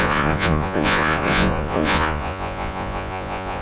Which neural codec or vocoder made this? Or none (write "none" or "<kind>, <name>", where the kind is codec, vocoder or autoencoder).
vocoder, Vocos